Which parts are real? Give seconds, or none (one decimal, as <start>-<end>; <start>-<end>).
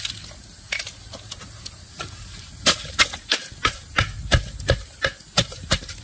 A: 0.0-1.9; 3.0-6.0